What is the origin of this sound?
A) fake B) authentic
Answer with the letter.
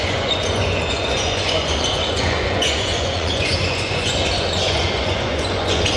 A